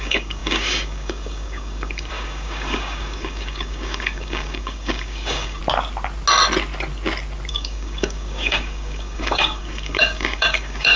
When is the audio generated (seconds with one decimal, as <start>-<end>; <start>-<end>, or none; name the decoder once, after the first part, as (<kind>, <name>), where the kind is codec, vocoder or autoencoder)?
0.0-5.6 (codec, DAC); 7.5-11.0